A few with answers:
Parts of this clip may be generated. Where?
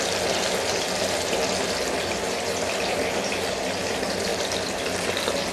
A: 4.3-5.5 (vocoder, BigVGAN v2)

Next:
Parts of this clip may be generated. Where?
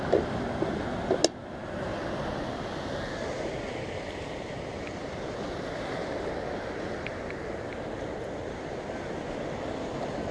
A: none